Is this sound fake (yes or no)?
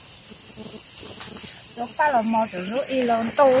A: no